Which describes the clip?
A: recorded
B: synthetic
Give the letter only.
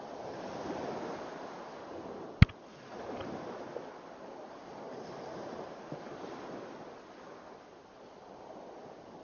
A